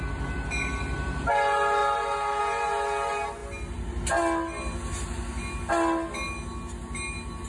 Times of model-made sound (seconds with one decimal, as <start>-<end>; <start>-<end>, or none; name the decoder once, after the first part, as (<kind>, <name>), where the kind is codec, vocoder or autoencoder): none